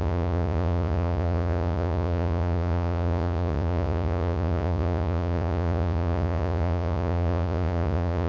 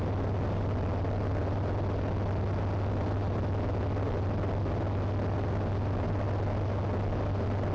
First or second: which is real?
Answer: second